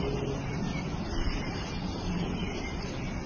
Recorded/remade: recorded